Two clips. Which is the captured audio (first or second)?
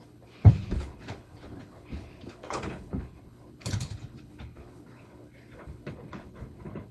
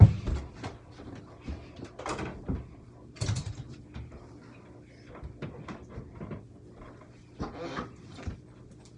second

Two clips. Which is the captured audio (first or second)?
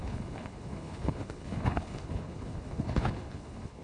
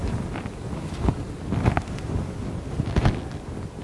second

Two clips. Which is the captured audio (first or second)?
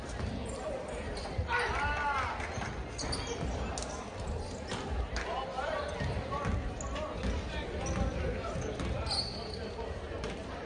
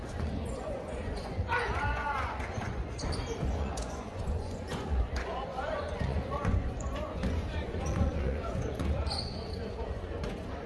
first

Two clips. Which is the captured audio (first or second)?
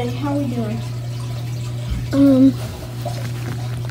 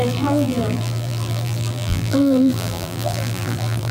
first